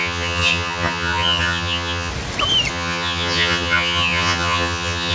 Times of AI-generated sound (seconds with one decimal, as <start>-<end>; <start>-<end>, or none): 0.0-2.1; 2.7-5.1